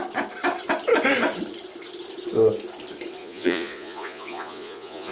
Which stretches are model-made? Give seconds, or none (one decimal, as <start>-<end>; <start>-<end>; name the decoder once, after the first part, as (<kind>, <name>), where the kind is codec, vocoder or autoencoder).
3.2-5.1 (vocoder, Vocos)